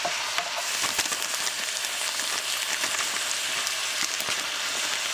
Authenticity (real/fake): real